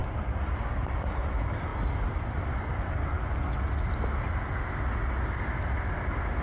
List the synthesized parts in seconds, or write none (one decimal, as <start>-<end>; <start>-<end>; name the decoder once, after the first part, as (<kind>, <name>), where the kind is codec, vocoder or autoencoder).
none